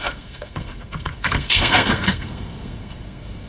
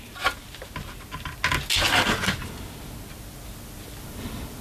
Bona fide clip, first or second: second